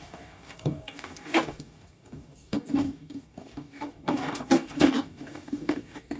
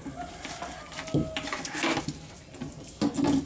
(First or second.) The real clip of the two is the second